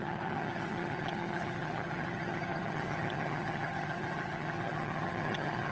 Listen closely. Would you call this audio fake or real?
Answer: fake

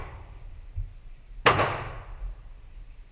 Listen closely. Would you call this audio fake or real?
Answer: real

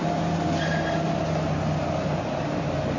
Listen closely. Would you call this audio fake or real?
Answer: real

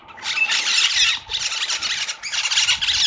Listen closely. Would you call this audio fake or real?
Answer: real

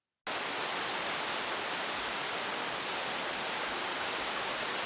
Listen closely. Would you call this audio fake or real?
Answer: real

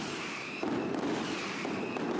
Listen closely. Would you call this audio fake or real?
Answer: real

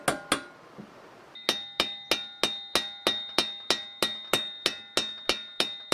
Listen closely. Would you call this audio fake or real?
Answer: real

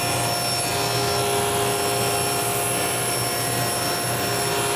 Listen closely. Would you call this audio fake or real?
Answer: real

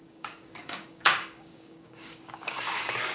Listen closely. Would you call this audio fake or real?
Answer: fake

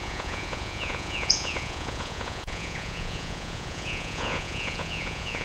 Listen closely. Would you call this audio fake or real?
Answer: fake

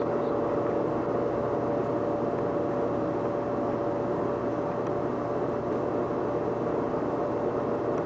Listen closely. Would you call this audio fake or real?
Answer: real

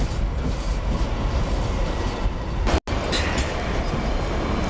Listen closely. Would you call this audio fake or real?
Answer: real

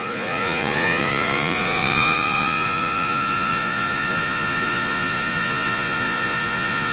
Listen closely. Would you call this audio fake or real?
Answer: fake